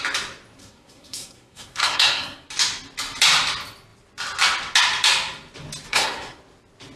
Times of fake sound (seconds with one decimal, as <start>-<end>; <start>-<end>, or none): 0.6-2.5; 5.9-6.4